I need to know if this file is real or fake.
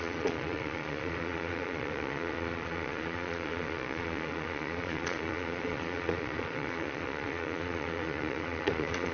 fake